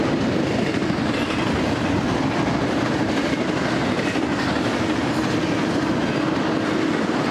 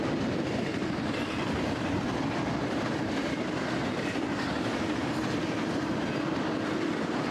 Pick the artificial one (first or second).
second